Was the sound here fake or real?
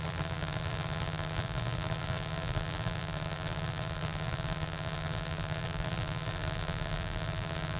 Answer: fake